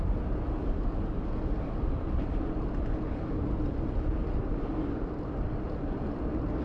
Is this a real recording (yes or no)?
yes